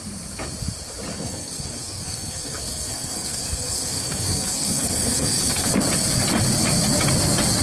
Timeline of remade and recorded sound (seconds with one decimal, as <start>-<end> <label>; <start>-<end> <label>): 0.0-1.1 recorded; 1.1-5.7 remade; 5.7-7.6 recorded